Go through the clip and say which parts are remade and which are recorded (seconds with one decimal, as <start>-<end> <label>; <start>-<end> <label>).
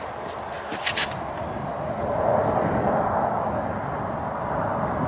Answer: 0.0-5.1 recorded